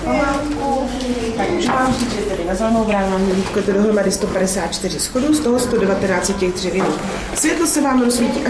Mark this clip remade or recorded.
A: recorded